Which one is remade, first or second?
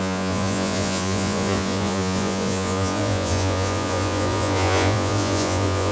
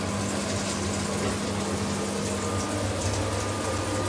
first